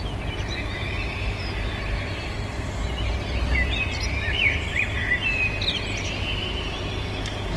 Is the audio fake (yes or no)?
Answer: no